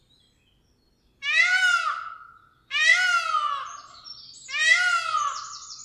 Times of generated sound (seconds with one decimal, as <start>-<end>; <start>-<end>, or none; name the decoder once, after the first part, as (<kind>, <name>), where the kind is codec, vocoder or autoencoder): none